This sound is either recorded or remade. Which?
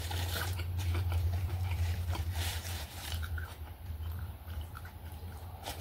remade